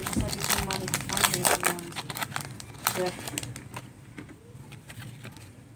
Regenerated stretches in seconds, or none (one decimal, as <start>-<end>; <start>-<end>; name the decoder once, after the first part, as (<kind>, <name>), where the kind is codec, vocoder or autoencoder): 0.0-1.4 (vocoder, BigVGAN v2); 3.8-5.8